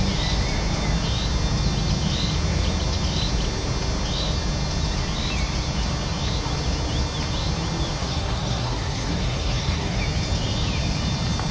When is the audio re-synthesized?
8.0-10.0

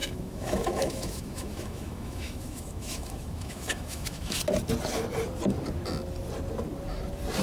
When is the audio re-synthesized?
0.0-4.4

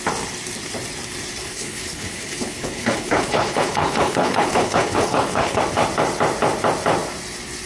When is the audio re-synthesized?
1.4-5.6

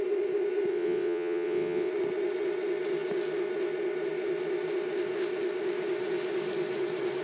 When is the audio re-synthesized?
0.7-1.9

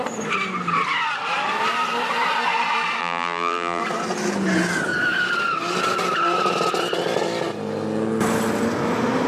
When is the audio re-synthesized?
3.0-3.8

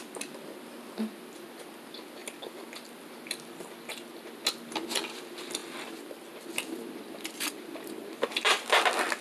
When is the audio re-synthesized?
none

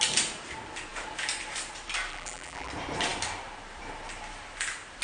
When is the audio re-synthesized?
2.1-2.7